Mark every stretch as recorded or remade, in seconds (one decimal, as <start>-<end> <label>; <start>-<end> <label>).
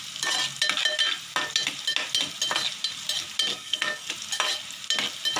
0.0-3.5 recorded; 3.5-4.1 remade; 4.1-5.4 recorded